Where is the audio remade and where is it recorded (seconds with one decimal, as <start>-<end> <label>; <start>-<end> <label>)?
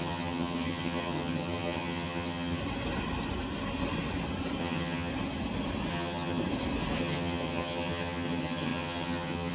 0.0-2.6 remade; 2.6-4.6 recorded; 4.6-5.1 remade; 5.1-5.9 recorded; 5.9-6.4 remade; 6.4-7.0 recorded; 7.0-9.5 remade